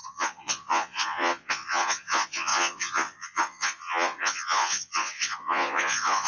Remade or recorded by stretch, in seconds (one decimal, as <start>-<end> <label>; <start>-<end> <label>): 0.0-6.3 remade